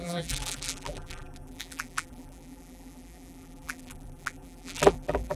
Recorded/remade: remade